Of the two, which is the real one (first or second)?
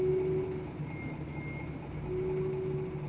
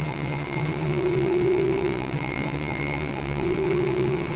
first